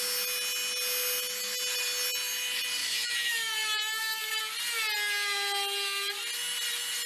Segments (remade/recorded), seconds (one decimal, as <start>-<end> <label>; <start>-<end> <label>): 0.0-2.8 recorded; 2.8-4.4 remade; 4.4-7.1 recorded